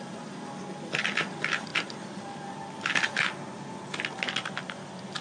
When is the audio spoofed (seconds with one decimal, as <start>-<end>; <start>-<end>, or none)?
none